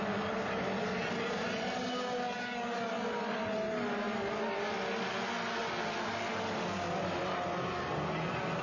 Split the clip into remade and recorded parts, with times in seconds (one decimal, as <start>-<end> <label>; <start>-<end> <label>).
0.0-8.6 recorded